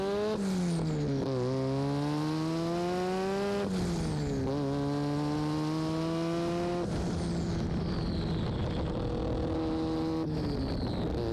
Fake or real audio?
real